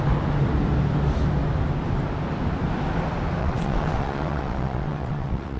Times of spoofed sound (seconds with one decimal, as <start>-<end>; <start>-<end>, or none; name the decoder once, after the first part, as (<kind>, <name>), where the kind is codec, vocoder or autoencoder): 3.4-5.6 (vocoder, WaveNeXt)